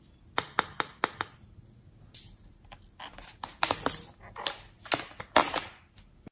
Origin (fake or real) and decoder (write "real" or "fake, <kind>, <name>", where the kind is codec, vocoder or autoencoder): real